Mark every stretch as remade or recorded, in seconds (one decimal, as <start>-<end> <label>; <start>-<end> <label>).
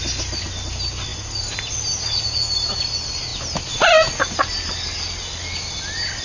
0.0-6.2 recorded